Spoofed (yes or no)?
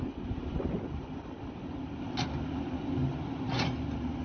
no